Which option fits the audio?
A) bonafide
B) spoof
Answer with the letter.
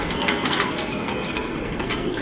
B